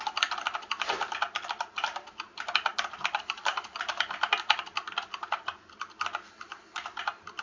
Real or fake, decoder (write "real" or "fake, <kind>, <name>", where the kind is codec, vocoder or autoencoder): real